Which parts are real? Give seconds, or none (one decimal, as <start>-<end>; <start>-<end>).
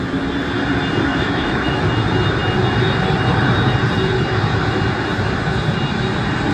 0.0-1.1; 1.8-6.5